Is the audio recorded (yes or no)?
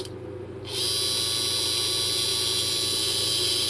yes